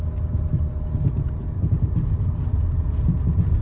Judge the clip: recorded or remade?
recorded